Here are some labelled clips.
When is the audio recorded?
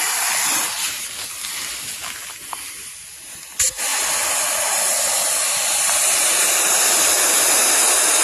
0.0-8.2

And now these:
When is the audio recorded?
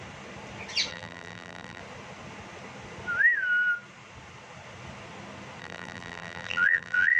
0.0-0.9; 1.8-5.6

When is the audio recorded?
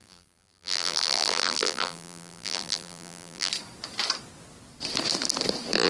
3.5-5.9